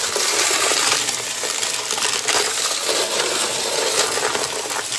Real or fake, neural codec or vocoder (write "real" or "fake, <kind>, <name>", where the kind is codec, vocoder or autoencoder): fake, vocoder, BigVGAN v2